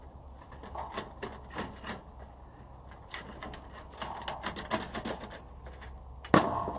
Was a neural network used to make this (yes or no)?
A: no